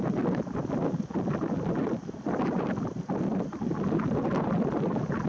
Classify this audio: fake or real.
real